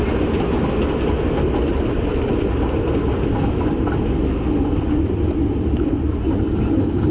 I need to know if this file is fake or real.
real